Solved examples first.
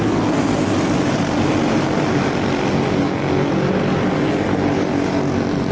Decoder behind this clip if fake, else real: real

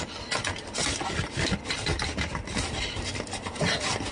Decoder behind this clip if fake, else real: real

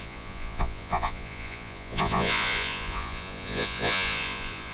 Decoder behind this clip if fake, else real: fake, vocoder, Vocos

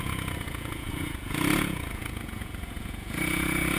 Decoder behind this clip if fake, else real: fake, vocoder, Vocos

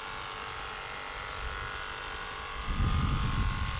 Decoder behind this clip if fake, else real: real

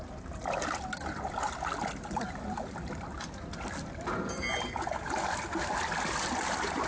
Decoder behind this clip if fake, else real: real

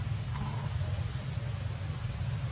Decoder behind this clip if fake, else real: real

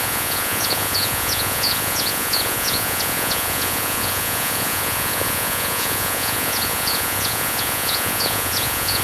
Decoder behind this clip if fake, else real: fake, vocoder, Vocos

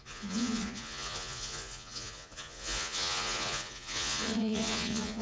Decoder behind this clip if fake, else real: fake, vocoder, Vocos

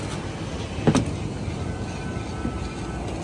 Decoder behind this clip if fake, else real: real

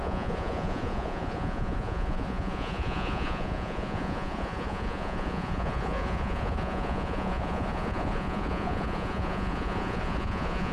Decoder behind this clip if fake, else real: fake, vocoder, Vocos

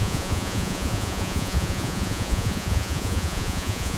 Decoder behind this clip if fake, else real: fake, vocoder, Vocos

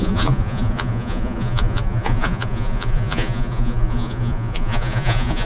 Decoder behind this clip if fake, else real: fake, vocoder, Vocos